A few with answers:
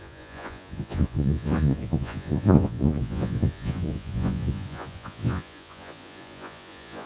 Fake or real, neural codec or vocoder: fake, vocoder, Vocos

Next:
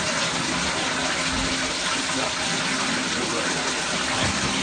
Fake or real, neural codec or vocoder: real